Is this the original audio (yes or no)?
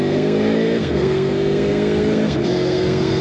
no